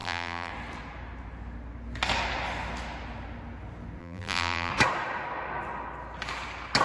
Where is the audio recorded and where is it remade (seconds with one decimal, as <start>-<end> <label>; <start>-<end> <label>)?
0.0-0.5 remade; 0.5-4.0 recorded; 4.0-4.7 remade; 4.7-6.8 recorded